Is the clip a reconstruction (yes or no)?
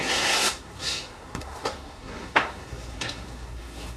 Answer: yes